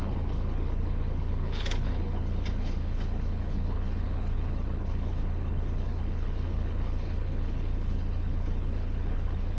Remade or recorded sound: remade